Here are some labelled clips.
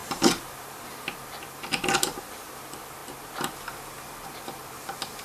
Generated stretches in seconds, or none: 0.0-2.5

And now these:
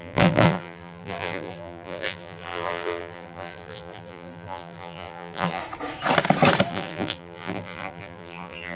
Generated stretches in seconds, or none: 0.0-5.6; 6.7-8.8

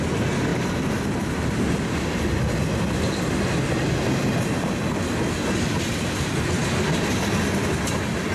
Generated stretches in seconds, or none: 0.5-1.2